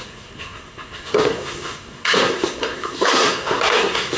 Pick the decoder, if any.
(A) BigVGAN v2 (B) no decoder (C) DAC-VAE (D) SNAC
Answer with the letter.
D